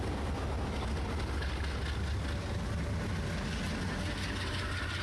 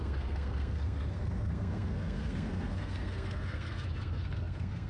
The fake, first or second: second